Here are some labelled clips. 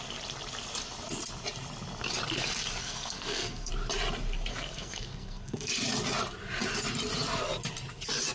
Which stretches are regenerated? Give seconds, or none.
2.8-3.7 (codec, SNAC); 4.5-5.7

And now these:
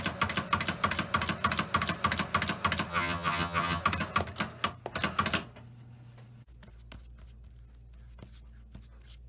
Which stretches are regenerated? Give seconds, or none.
2.9-3.8 (vocoder, HiFi-GAN)

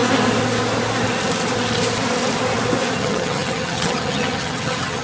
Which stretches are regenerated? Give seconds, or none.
3.0-5.0 (vocoder, HiFi-GAN)

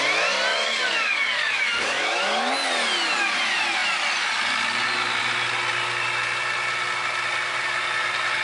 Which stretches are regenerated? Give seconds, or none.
0.5-2.5 (codec, DAC)